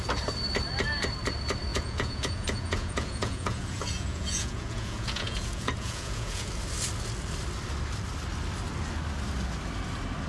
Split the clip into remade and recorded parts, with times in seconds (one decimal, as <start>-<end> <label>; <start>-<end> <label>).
0.0-1.7 recorded; 1.7-6.5 remade; 6.5-10.3 recorded